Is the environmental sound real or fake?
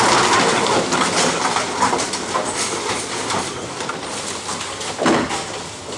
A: real